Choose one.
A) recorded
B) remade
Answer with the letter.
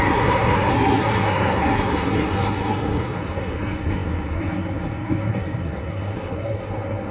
B